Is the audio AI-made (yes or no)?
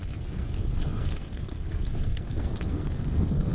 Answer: yes